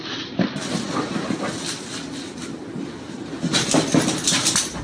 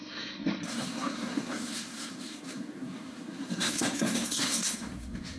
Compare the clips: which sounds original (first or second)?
first